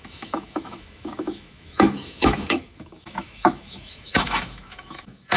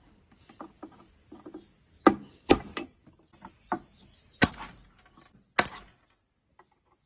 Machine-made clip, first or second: first